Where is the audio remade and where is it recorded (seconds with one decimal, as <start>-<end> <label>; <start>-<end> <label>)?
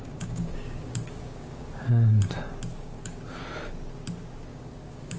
0.0-1.9 remade; 1.9-2.7 recorded; 2.7-3.2 remade; 3.2-4.5 recorded; 4.5-5.2 remade